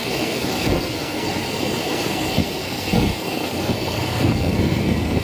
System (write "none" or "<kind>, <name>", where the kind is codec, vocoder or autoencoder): codec, SNAC